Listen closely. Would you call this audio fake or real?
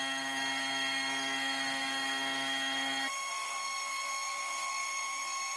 fake